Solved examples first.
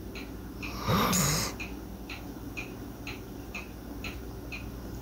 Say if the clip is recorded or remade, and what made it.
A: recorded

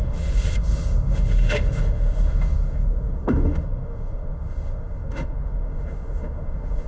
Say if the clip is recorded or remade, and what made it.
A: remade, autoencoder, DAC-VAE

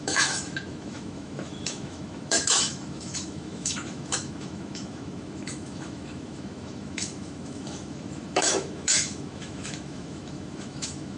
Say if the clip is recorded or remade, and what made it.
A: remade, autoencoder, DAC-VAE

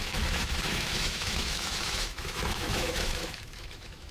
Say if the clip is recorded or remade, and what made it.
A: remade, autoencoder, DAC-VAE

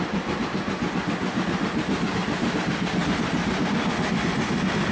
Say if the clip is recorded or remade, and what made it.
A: recorded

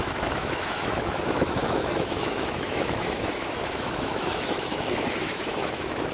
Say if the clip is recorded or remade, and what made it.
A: remade, autoencoder, DAC-VAE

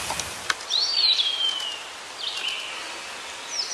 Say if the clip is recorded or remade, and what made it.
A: recorded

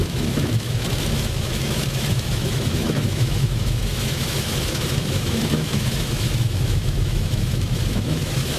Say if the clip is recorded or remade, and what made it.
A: remade, autoencoder, DAC-VAE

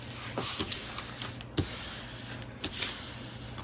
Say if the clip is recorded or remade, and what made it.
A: recorded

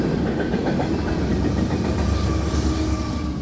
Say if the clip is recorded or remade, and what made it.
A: recorded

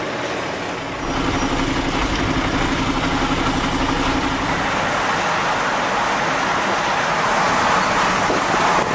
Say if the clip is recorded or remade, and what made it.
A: recorded